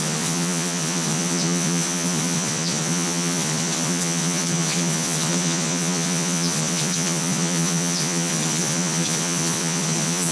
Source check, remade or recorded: remade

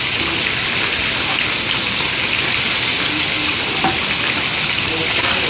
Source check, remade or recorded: recorded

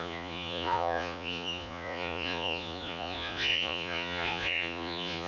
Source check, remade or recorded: remade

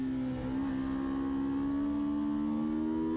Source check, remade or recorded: recorded